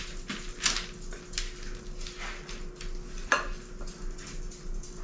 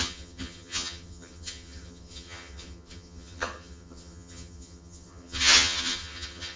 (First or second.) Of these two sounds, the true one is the first